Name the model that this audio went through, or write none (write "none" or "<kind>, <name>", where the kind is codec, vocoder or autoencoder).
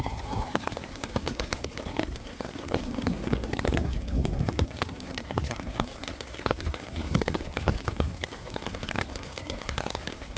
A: codec, SNAC